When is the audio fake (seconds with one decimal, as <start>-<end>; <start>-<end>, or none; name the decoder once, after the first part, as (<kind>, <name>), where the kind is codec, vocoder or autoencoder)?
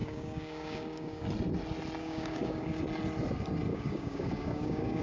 0.0-1.2 (codec, DAC); 2.0-2.8; 3.7-5.0